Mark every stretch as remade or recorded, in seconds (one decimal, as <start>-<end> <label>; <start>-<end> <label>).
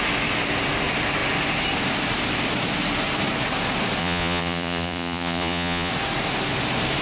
0.0-4.0 recorded; 4.0-5.9 remade; 5.9-7.0 recorded